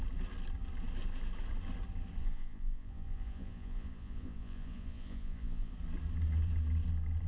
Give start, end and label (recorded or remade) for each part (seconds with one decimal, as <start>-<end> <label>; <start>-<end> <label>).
0.0-2.2 recorded; 2.2-5.7 remade; 5.7-7.3 recorded